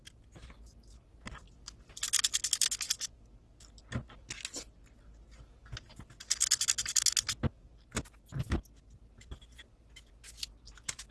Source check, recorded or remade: recorded